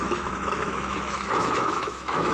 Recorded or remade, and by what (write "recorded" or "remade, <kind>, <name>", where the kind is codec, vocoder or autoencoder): remade, autoencoder, DAC-VAE